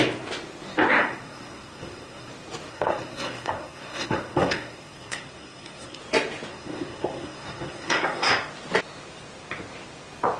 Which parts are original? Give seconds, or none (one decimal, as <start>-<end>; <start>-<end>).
0.0-1.0; 2.3-2.7; 6.0-6.5; 8.3-10.4